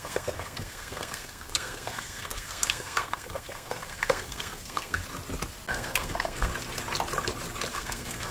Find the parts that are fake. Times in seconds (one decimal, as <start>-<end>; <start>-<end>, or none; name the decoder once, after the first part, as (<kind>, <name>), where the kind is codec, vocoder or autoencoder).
0.0-5.0 (codec, SNAC); 5.7-6.5; 7.7-8.3